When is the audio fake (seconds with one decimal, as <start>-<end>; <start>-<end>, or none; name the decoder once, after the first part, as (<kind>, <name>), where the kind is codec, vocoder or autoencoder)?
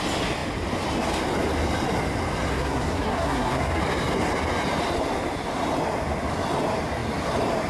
2.5-3.8 (codec, SNAC)